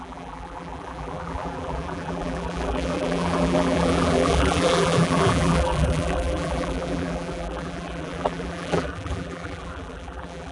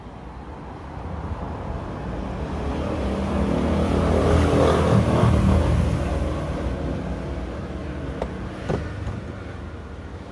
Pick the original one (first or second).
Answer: second